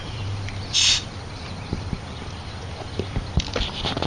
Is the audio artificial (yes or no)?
yes